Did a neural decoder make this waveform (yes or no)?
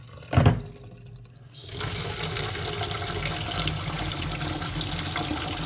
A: no